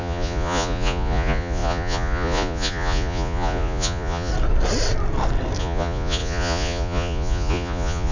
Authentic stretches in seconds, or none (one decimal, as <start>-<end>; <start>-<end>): 4.3-5.6